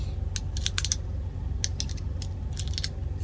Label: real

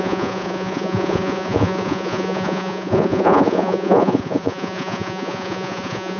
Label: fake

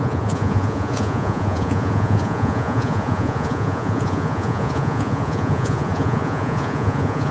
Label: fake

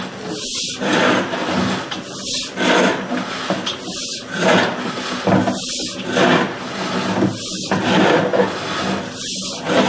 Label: real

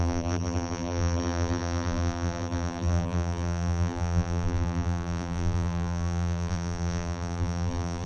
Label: fake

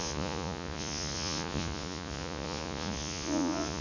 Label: fake